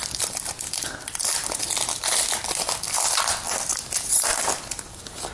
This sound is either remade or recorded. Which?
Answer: recorded